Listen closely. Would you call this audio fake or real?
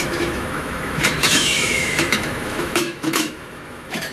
fake